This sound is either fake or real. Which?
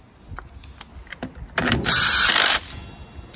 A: real